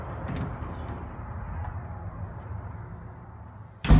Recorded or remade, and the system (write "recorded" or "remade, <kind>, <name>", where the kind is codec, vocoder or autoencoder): recorded